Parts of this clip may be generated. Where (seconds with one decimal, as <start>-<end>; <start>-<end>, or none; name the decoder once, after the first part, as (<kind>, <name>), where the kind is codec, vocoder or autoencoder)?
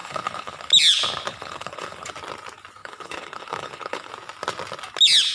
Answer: 0.0-0.7 (codec, HILCodec); 1.3-2.1; 2.8-4.1